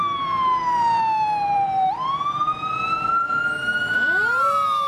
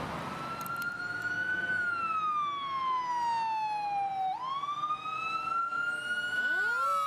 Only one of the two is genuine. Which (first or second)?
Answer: second